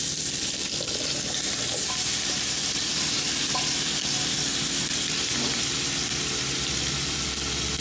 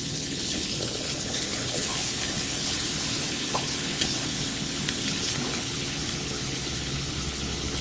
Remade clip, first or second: second